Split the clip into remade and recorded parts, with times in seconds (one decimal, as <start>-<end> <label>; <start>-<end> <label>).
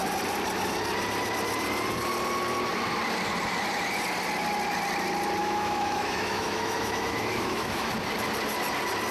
0.0-5.4 recorded; 5.4-7.9 remade; 7.9-9.1 recorded